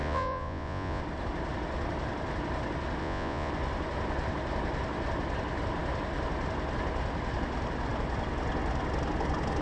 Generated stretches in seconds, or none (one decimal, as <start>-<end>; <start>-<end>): 0.0-1.0; 3.0-3.5